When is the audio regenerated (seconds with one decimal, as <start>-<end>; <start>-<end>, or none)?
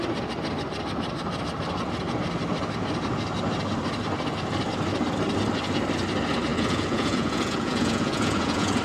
6.5-8.8